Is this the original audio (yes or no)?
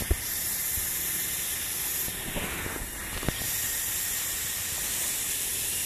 yes